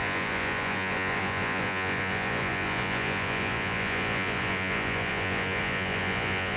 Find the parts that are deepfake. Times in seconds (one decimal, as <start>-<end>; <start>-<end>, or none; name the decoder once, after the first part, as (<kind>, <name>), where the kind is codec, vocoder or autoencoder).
0.0-6.6 (vocoder, Vocos)